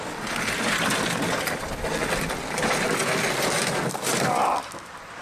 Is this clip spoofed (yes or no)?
no